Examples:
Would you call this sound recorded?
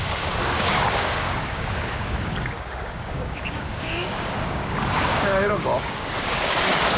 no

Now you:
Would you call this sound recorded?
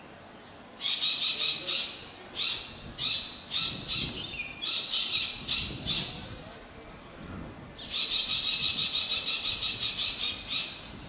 yes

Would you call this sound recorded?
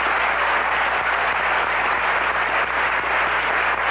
yes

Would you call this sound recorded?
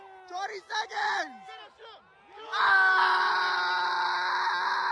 yes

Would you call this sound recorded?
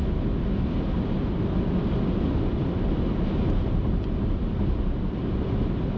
yes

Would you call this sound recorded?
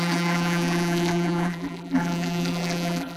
no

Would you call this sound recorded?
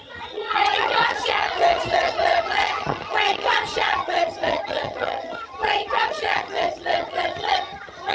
no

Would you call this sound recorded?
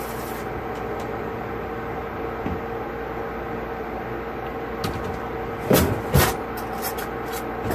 yes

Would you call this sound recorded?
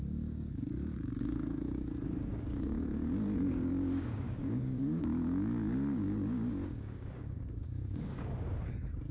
no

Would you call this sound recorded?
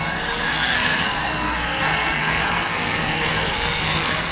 no